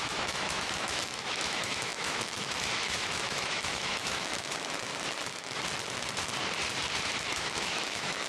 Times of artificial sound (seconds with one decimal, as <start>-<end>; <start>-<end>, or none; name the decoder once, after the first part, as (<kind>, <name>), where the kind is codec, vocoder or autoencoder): 0.0-4.9 (autoencoder, DAC-VAE); 7.3-8.3